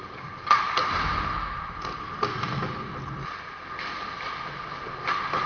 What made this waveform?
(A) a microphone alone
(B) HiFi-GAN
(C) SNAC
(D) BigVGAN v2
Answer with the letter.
A